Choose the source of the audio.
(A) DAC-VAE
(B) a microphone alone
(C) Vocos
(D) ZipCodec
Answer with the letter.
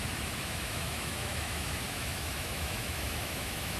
A